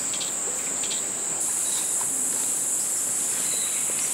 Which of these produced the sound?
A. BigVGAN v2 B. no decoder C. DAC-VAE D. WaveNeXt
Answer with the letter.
B